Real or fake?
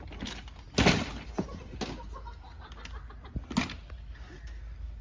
real